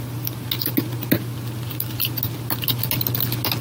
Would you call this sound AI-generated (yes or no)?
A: no